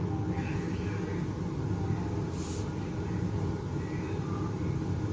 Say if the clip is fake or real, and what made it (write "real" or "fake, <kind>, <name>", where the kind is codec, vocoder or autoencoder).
real